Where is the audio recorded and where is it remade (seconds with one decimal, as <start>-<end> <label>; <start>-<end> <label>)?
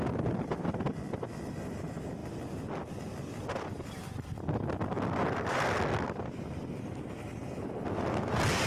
0.0-8.7 recorded